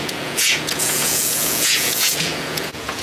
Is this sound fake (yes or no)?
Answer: yes